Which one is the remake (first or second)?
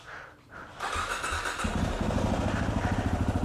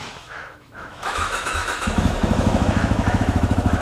second